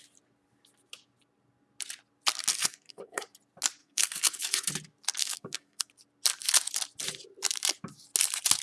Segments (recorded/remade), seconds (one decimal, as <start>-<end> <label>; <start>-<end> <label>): 0.0-2.5 recorded; 2.5-3.2 remade; 3.2-3.8 recorded; 3.8-4.7 remade; 4.7-5.2 recorded; 5.2-5.9 remade; 5.9-8.6 recorded